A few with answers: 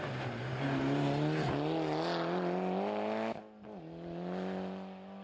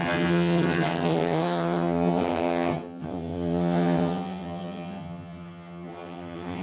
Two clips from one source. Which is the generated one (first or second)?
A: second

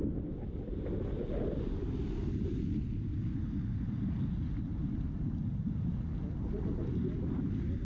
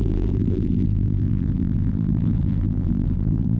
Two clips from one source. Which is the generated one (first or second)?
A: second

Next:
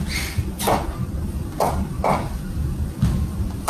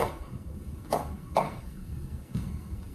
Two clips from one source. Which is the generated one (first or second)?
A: second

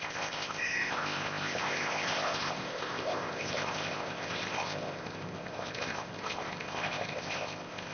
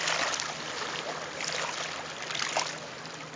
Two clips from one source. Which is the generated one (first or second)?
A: first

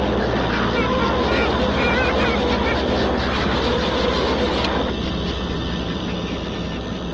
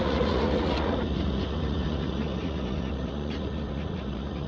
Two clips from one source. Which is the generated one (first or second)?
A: second